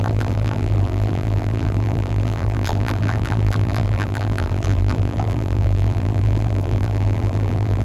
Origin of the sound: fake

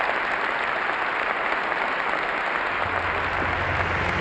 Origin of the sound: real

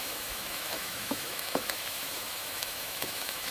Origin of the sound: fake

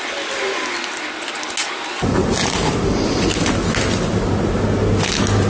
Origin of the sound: real